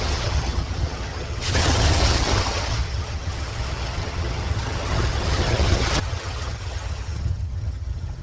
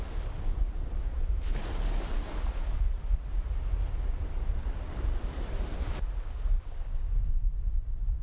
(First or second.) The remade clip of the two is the first